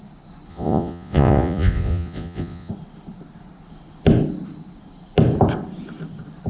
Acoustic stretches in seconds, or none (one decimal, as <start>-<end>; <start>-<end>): 0.0-0.5; 2.7-6.5